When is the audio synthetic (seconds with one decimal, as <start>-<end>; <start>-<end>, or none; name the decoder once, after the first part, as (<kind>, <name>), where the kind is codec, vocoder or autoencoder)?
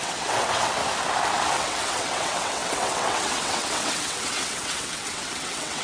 0.0-0.8 (vocoder, WaveNeXt); 1.5-5.8